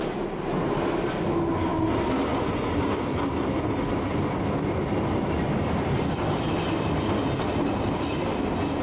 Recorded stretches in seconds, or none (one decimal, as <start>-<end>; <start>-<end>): 0.0-8.8